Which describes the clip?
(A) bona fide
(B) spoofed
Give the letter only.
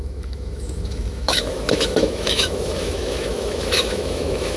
B